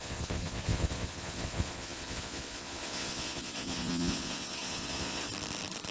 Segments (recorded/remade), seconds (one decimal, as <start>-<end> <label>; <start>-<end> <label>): 0.0-5.3 remade; 5.3-5.9 recorded